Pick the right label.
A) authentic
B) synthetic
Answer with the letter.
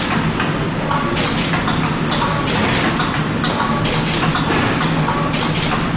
A